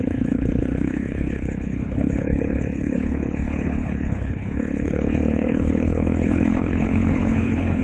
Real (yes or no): no